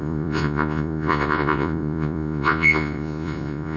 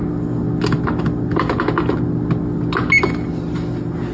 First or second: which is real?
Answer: second